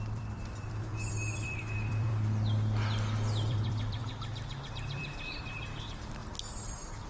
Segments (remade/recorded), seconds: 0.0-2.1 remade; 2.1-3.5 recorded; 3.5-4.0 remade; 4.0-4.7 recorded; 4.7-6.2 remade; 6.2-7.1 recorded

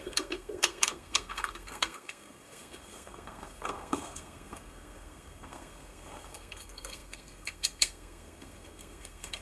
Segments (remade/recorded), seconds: 0.0-9.4 remade

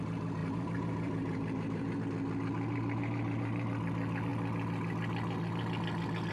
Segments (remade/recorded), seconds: 0.0-0.4 recorded; 0.4-2.0 remade; 2.0-2.7 recorded; 2.7-3.7 remade; 3.7-6.3 recorded

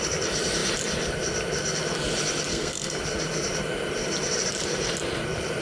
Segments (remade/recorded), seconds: 0.0-2.5 recorded; 2.5-3.0 remade; 3.0-5.6 recorded

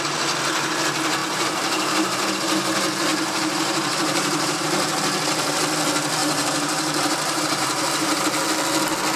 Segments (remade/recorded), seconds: 0.0-1.2 recorded; 1.2-2.3 remade; 2.3-3.1 recorded; 3.1-4.9 remade; 4.9-6.2 recorded; 6.2-8.2 remade; 8.2-9.2 recorded